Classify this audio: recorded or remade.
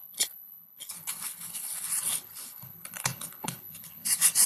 remade